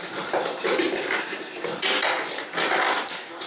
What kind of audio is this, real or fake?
real